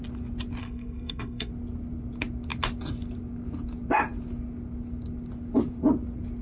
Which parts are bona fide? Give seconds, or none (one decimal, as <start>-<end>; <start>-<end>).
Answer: 0.0-0.6; 1.5-6.4